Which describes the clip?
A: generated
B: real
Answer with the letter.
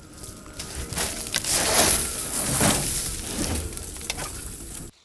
B